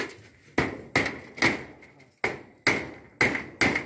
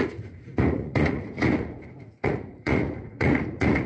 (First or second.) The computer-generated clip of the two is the second